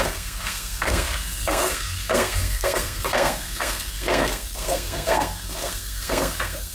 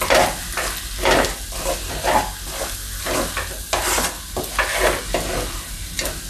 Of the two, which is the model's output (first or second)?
first